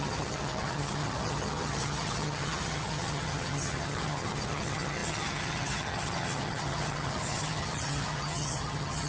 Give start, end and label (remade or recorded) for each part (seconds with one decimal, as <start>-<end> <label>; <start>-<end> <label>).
0.0-9.1 remade